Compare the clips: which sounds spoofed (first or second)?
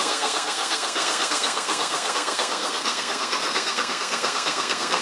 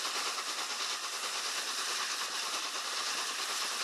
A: first